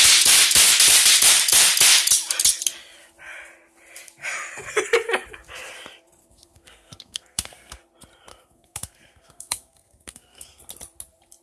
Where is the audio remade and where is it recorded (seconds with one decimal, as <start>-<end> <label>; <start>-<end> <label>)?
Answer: 0.0-6.2 recorded; 6.2-7.8 remade; 7.8-8.3 recorded; 8.3-10.6 remade; 10.6-11.4 recorded